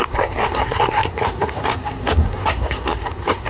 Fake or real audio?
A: fake